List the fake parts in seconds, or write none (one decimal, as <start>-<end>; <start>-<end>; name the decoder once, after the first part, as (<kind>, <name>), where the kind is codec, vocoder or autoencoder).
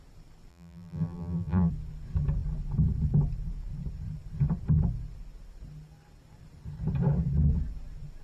0.5-1.7 (vocoder, BigVGAN v2)